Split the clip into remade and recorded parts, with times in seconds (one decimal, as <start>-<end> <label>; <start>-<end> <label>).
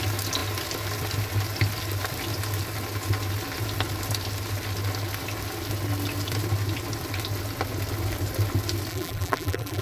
0.0-8.9 recorded; 8.9-9.8 remade